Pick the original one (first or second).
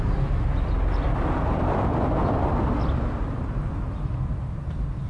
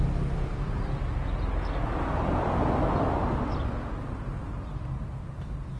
second